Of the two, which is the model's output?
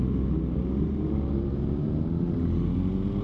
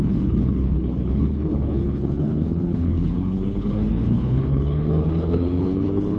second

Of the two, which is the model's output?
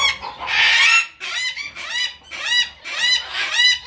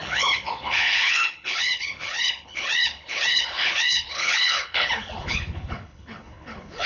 second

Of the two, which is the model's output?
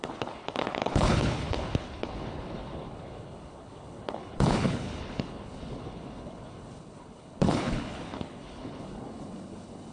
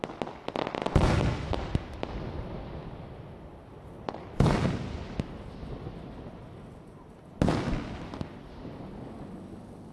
first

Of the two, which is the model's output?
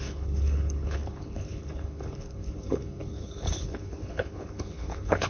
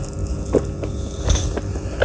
first